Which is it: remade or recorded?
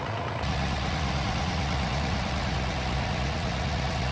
remade